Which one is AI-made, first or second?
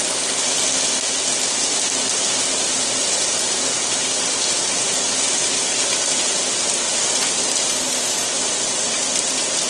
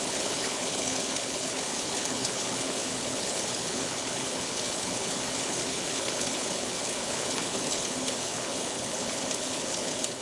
second